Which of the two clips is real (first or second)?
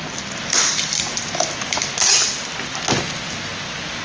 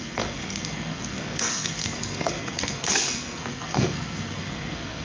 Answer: first